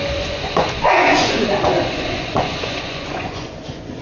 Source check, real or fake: fake